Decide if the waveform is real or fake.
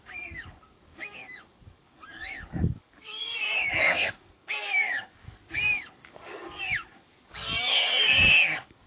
fake